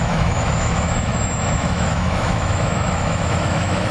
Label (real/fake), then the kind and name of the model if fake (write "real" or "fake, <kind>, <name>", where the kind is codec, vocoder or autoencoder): fake, autoencoder, DAC-VAE